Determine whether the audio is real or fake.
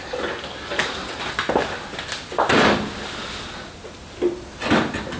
real